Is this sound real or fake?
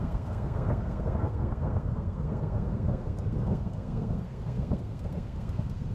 fake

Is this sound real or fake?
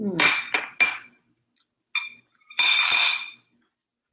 real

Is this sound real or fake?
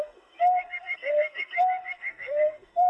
fake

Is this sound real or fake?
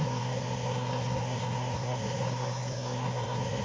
fake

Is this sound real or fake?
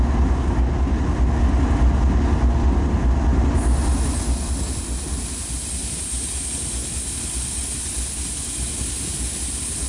real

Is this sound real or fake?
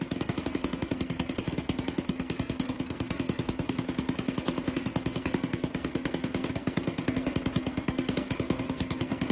fake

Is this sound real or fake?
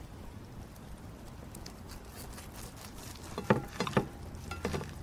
real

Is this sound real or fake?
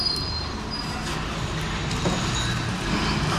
real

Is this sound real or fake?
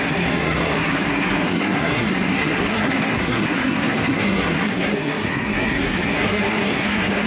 fake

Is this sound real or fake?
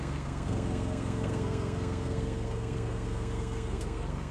fake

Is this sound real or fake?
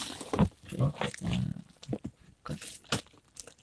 real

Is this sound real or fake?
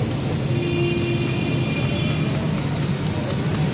real